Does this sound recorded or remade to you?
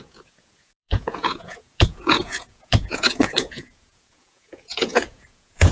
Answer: remade